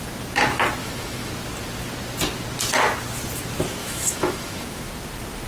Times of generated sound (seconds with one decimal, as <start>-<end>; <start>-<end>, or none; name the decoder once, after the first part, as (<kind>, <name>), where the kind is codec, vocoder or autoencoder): 0.8-1.3 (autoencoder, DAC-VAE); 3.8-4.9

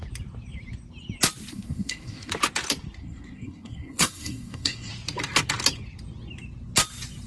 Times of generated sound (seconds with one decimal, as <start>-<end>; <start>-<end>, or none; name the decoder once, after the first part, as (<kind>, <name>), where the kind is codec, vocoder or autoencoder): 1.5-2.3 (codec, SNAC); 3.0-4.9

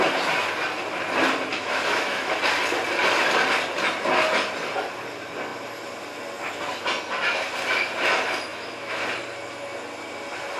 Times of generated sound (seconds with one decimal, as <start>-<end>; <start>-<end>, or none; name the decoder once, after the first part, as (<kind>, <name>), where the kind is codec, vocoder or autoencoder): 1.5-2.4 (autoencoder, DAC-VAE); 8.5-9.0

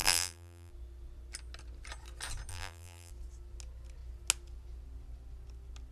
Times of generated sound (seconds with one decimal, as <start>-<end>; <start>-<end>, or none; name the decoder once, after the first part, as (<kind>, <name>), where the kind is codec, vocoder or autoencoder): 0.0-0.7 (vocoder, BigVGAN v2); 2.5-3.1

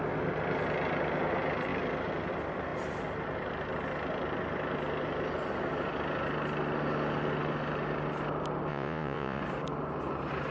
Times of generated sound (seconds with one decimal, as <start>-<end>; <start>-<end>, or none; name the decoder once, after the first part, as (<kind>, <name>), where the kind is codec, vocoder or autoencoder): 8.7-9.4 (vocoder, Vocos)

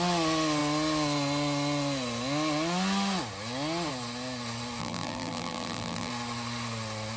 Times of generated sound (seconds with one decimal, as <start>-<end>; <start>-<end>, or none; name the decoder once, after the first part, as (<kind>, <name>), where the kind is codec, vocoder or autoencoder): 4.8-6.1 (vocoder, BigVGAN v2)

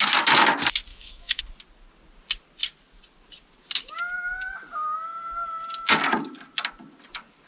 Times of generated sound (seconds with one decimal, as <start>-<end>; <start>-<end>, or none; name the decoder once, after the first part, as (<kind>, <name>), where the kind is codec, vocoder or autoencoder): 0.9-1.4 (autoencoder, DAC-VAE)

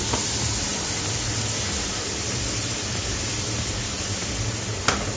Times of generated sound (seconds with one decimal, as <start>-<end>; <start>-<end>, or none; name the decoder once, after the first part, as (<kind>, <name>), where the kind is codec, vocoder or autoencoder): 0.7-3.8 (vocoder, BigVGAN v2)